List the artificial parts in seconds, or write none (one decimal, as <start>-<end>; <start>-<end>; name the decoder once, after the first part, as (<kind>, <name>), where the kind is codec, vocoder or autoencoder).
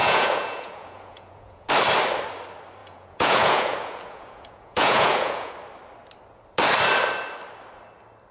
0.0-1.7 (vocoder, Vocos); 2.8-5.5